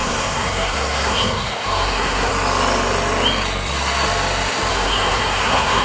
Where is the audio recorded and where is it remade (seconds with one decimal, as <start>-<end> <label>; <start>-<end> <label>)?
0.0-2.3 remade; 2.3-4.7 recorded; 4.7-5.8 remade

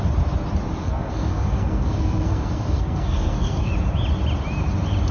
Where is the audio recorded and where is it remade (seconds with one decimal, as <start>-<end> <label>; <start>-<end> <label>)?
0.0-0.8 recorded; 0.8-3.7 remade; 3.7-5.1 recorded

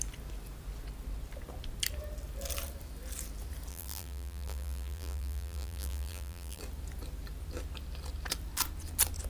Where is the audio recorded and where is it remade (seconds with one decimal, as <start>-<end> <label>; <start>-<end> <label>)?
0.0-3.7 recorded; 3.7-6.6 remade; 6.6-9.3 recorded

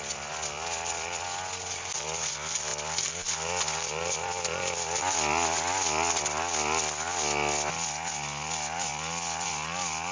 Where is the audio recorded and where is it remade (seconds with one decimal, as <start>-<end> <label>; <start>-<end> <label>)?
0.0-10.1 recorded